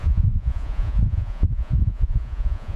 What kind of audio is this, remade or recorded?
remade